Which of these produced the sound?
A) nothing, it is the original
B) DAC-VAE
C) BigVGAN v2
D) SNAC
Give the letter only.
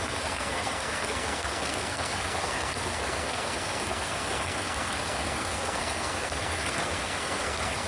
D